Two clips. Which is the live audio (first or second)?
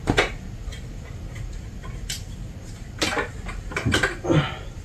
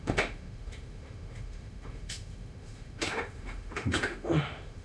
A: first